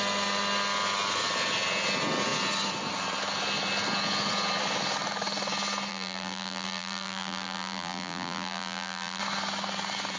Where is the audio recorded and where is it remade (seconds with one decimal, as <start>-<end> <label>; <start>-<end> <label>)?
0.0-5.9 recorded; 5.9-9.2 remade; 9.2-10.2 recorded